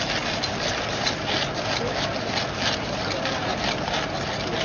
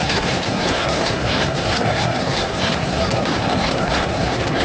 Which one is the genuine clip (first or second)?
first